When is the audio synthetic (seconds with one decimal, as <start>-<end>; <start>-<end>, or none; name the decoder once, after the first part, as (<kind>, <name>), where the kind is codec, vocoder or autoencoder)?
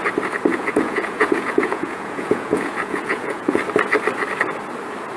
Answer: 0.5-3.6 (vocoder, Vocos)